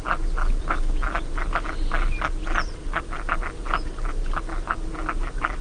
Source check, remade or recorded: recorded